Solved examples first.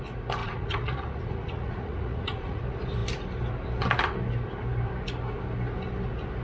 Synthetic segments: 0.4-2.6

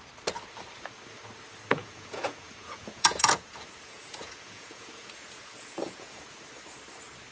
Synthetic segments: 1.8-6.2